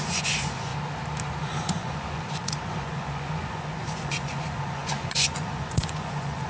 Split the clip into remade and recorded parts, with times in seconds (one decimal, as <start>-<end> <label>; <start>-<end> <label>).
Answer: 0.0-0.7 remade; 0.7-1.4 recorded; 1.4-6.5 remade